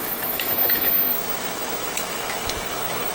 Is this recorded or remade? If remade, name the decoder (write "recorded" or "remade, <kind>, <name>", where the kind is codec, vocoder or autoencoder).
remade, autoencoder, DAC-VAE